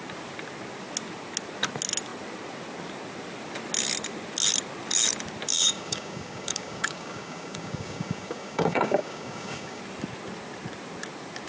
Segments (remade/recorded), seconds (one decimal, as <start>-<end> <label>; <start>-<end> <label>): 0.0-5.5 recorded; 5.5-9.8 remade; 9.8-11.5 recorded